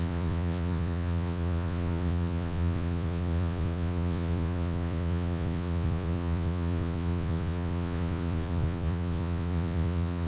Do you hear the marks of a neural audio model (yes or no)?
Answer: yes